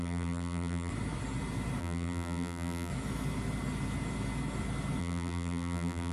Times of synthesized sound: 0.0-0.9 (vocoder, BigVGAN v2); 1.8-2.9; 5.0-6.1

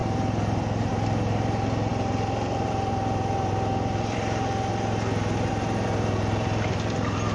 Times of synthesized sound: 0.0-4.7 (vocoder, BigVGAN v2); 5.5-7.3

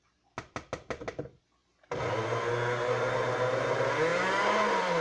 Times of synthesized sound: 4.1-5.0 (vocoder, BigVGAN v2)